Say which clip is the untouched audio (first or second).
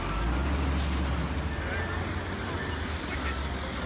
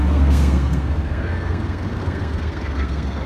first